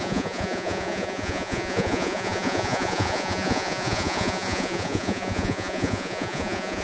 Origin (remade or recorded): remade